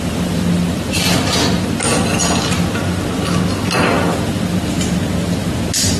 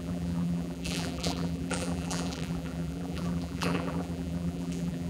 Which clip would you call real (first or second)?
first